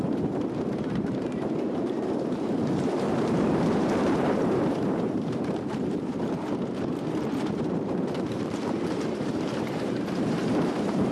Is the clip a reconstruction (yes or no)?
yes